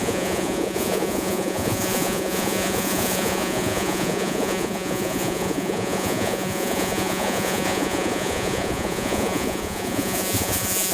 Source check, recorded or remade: remade